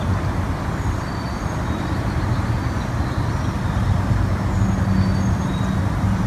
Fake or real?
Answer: real